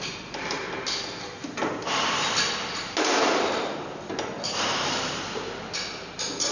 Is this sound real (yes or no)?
yes